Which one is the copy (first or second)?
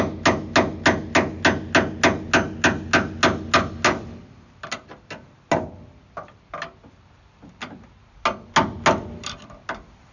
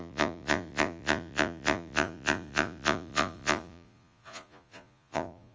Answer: second